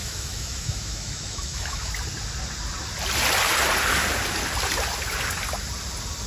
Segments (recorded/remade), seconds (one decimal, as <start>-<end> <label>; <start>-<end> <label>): 0.0-1.9 remade; 1.9-6.3 recorded

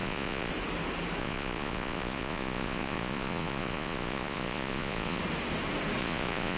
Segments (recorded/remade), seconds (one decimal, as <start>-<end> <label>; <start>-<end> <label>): 0.0-0.5 remade; 0.5-1.2 recorded; 1.2-5.2 remade; 5.2-6.0 recorded; 6.0-6.6 remade

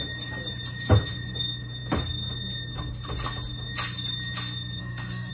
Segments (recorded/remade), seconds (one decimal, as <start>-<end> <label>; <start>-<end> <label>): 0.0-4.8 recorded; 4.8-5.3 remade

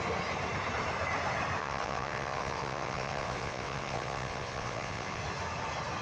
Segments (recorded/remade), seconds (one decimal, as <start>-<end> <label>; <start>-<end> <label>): 0.0-1.6 recorded; 1.6-5.2 remade; 5.2-6.0 recorded

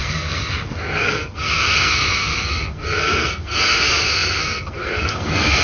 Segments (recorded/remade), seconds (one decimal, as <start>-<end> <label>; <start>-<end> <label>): 0.0-5.6 remade

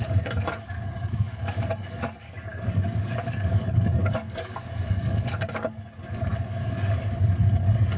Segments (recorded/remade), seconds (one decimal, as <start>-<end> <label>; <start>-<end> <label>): 0.0-8.0 remade